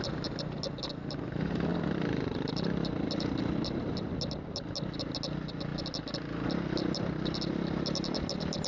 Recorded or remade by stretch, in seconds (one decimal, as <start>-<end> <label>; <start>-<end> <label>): 0.0-8.7 recorded